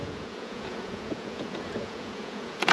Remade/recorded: remade